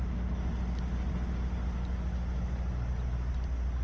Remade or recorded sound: recorded